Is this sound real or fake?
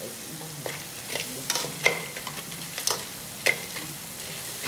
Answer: real